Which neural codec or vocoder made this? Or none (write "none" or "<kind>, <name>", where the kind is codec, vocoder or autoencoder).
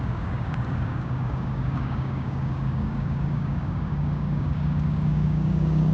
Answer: codec, DAC